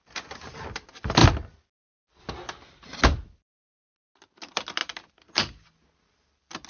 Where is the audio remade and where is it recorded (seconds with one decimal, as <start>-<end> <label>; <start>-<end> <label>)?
0.0-6.7 recorded